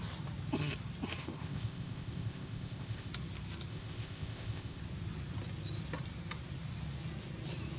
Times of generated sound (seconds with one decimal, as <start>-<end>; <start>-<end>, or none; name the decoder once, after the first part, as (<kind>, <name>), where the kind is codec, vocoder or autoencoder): 1.2-3.1 (codec, ZipCodec); 3.7-4.8